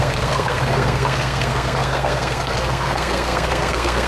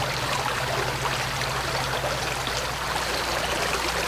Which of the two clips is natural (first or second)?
second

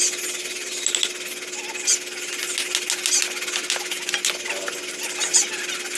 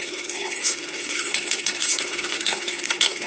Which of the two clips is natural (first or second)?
first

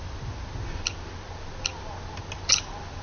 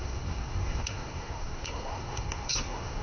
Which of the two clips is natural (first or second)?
first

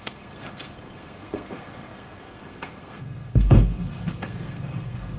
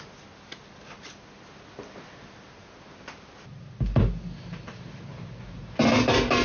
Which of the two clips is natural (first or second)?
second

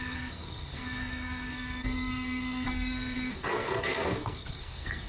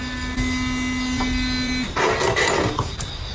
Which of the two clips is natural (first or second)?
second